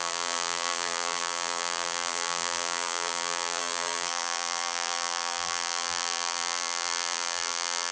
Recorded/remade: remade